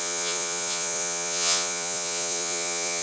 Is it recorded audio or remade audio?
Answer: remade